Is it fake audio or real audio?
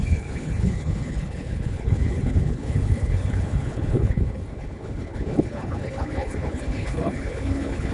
fake